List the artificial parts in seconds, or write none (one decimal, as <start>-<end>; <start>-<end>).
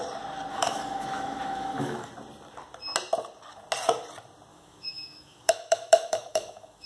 0.5-2.1; 4.5-6.9